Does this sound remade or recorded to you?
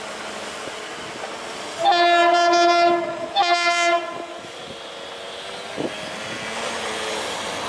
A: recorded